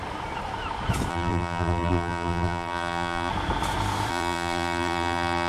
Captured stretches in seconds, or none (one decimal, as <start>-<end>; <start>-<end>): 0.0-1.1; 3.3-4.1